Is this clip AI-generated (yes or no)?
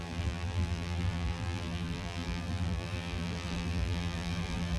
yes